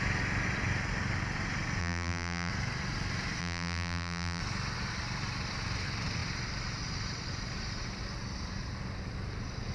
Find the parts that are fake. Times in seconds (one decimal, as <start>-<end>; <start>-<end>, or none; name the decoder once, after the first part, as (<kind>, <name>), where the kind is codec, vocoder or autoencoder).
1.8-2.5 (vocoder, BigVGAN v2); 3.4-4.4